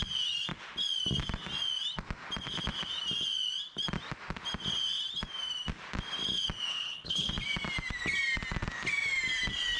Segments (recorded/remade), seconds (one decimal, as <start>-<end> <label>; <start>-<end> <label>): 0.0-6.7 recorded; 6.7-7.3 remade; 7.3-9.8 recorded